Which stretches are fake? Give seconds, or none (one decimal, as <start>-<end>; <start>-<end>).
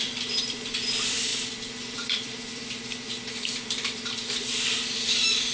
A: 0.0-5.5